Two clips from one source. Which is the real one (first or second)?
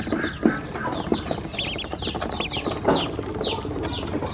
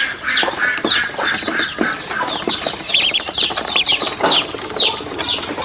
first